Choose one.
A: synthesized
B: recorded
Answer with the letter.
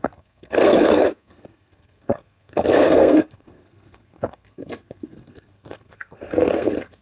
A